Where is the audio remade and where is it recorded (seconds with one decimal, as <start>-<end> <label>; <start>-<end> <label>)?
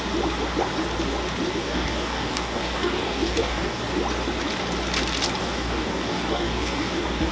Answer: 0.0-1.6 recorded; 1.6-3.8 remade; 3.8-5.4 recorded; 5.4-7.3 remade